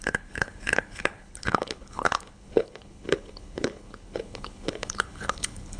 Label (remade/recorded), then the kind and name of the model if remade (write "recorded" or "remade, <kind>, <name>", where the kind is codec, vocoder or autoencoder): remade, codec, HILCodec